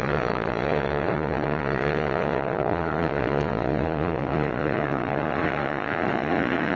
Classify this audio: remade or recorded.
remade